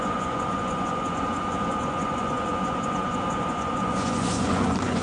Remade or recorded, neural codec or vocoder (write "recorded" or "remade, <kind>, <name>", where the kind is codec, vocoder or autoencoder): remade, vocoder, Vocos